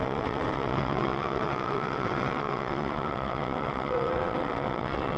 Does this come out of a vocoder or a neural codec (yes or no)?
yes